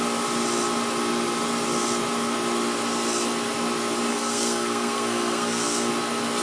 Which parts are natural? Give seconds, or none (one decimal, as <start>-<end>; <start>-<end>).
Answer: 0.0-4.1; 5.9-6.4